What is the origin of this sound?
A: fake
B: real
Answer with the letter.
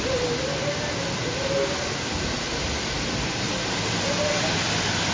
B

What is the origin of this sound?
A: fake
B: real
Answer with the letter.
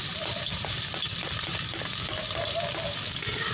B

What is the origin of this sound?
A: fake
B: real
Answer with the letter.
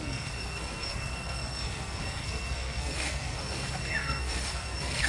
A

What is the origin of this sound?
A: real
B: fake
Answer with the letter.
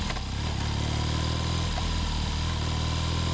A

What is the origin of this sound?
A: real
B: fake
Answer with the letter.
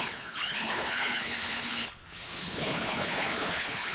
B